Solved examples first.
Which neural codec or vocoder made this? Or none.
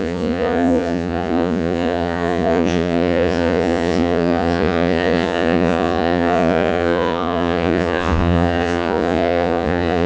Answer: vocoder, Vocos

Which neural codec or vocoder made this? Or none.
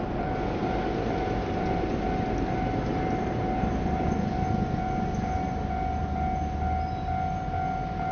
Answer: none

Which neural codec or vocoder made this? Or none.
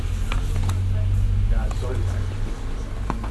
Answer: none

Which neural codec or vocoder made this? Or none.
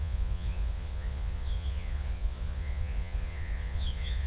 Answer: vocoder, Vocos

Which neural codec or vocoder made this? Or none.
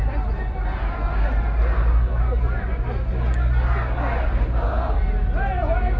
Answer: none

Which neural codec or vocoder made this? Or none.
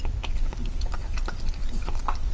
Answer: none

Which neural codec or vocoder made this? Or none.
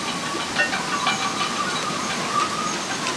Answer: none